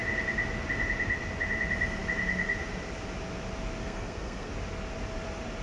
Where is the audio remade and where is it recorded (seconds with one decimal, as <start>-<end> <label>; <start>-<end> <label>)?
0.0-3.8 recorded; 3.8-4.5 remade; 4.5-5.6 recorded